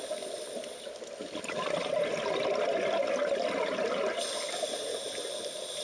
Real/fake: real